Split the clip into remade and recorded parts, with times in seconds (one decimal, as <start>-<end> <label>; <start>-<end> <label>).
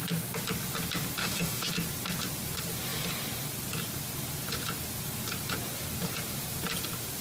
0.0-1.2 recorded; 1.2-1.7 remade; 1.7-7.2 recorded